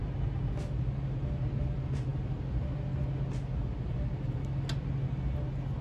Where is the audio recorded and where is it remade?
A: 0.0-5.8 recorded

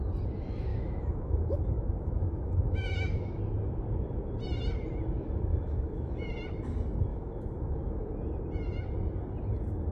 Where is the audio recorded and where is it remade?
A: 0.0-0.7 recorded; 0.7-3.4 remade; 3.4-5.5 recorded; 5.5-6.3 remade; 6.3-7.1 recorded; 7.1-8.1 remade; 8.1-9.9 recorded

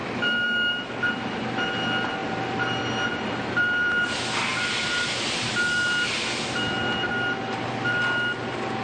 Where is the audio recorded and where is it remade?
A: 0.0-0.9 remade; 0.9-8.8 recorded

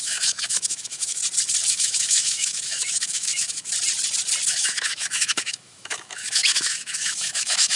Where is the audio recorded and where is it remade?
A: 0.0-1.2 remade; 1.2-1.7 recorded; 1.7-3.7 remade; 3.7-4.5 recorded; 4.5-7.8 remade

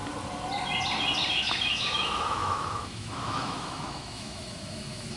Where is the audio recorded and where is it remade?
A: 0.0-1.3 recorded; 1.3-5.2 remade